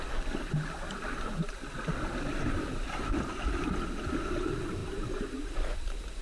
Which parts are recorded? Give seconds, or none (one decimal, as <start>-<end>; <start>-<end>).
0.0-2.3; 3.1-4.8; 5.4-6.2